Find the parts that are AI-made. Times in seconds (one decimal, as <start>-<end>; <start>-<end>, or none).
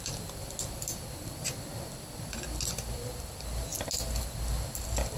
0.0-3.7; 4.2-5.2